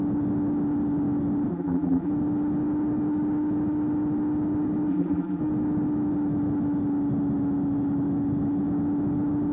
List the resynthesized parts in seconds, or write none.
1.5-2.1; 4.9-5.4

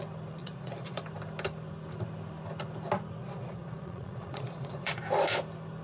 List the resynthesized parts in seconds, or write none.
0.4-1.0; 3.2-5.0